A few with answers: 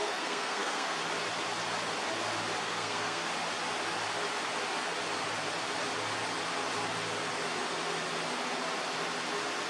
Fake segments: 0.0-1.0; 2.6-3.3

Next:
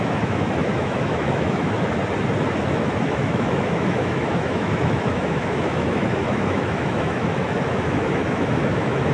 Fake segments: 0.0-2.0; 2.6-9.1